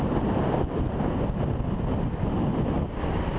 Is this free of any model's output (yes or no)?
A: yes